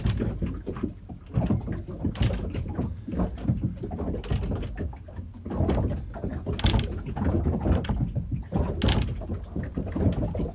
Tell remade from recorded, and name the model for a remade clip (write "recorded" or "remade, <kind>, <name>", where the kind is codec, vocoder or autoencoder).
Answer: recorded